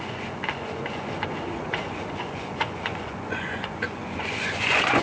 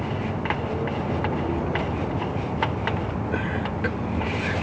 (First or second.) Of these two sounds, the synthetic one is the first